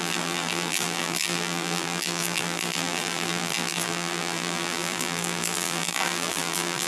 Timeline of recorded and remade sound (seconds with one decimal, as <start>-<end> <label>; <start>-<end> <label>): 0.0-6.9 remade